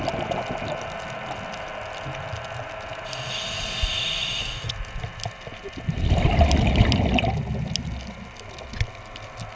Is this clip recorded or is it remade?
recorded